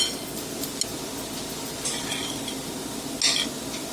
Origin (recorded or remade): recorded